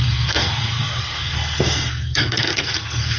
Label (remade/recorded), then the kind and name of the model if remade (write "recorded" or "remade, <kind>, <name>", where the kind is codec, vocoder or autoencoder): remade, codec, SNAC